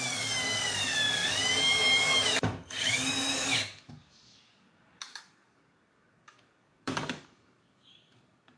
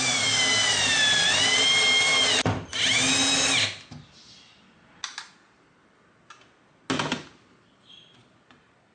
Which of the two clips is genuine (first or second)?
second